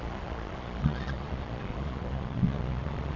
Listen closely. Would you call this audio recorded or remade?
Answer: remade